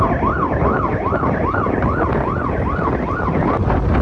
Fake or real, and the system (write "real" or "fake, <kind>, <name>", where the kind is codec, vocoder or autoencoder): real